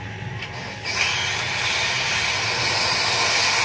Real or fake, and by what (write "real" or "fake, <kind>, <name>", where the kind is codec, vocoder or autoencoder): real